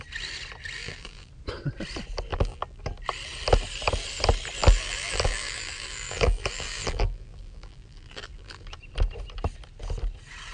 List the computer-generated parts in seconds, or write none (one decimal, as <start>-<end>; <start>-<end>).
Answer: 0.8-1.3; 2.3-2.8; 4.6-8.8